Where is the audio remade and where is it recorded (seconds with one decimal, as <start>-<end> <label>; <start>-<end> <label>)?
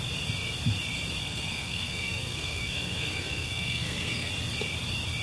0.0-1.2 recorded; 1.2-4.3 remade; 4.3-5.2 recorded